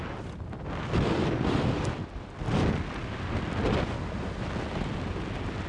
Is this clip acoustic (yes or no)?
yes